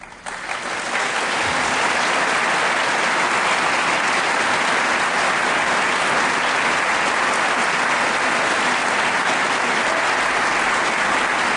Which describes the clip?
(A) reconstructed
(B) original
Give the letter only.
B